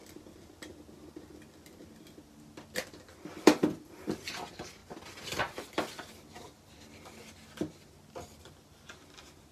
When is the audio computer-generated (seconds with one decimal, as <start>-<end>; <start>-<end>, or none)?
0.0-0.5